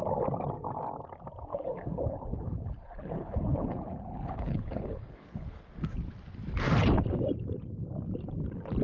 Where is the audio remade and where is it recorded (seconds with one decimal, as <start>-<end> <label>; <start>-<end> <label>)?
0.0-1.5 recorded; 1.5-5.6 remade; 5.6-8.8 recorded